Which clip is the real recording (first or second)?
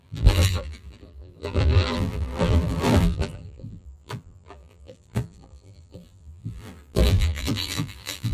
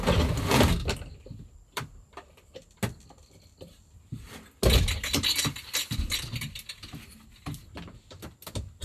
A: second